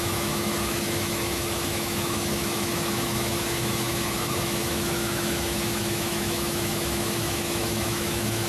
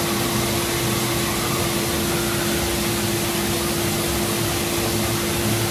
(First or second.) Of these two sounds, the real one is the second